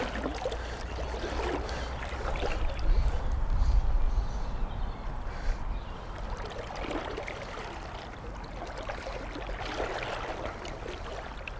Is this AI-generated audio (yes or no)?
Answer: no